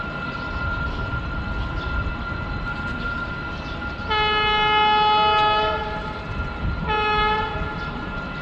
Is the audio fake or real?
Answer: real